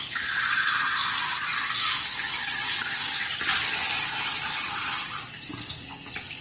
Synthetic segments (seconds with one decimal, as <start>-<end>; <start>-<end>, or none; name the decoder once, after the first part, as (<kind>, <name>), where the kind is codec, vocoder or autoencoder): none